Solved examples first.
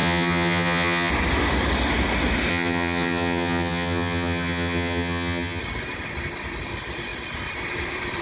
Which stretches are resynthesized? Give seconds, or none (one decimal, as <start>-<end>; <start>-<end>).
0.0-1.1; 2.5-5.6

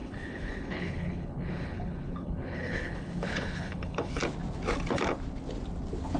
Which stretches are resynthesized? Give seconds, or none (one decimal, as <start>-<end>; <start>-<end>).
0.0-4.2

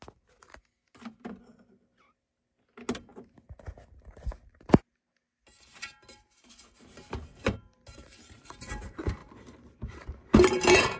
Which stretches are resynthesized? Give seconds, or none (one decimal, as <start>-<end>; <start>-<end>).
none

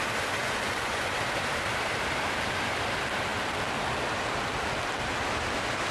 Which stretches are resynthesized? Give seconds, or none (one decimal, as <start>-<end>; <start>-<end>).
0.4-1.2

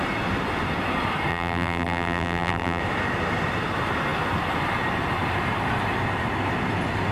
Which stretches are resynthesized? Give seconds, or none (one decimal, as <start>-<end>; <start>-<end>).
1.3-2.8